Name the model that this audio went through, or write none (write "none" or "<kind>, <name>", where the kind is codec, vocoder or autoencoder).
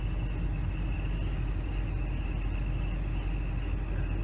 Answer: none